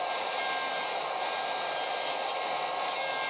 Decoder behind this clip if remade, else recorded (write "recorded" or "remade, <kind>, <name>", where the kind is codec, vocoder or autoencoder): recorded